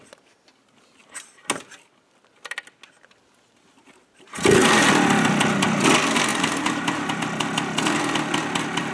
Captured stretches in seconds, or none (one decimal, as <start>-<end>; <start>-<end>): 0.0-6.3; 7.2-8.9